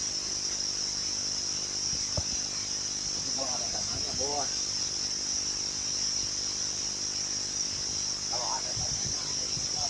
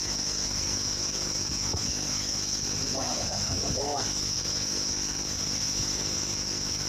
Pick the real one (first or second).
first